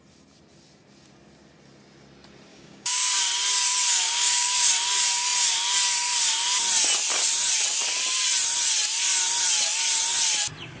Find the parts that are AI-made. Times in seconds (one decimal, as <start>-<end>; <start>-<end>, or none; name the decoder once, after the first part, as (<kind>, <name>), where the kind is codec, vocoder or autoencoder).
2.5-3.2 (codec, DAC); 3.9-4.7